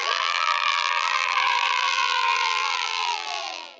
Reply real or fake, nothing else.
fake